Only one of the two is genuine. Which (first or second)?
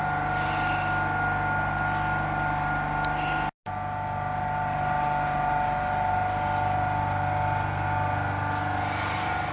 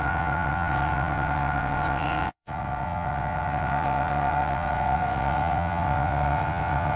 first